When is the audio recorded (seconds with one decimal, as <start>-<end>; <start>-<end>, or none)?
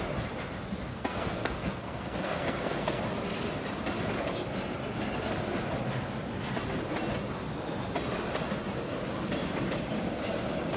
0.0-0.9; 3.0-10.8